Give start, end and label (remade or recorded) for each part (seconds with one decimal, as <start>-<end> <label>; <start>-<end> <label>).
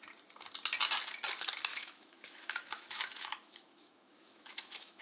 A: 0.0-1.7 recorded; 1.7-5.0 remade